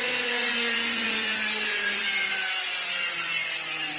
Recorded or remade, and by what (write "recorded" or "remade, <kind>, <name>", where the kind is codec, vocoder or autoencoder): remade, vocoder, Vocos